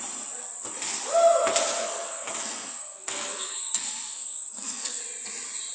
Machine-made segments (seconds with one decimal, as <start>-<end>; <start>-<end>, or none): 1.8-5.0